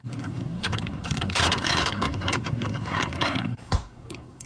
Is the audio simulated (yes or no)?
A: yes